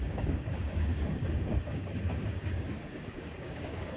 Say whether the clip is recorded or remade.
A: remade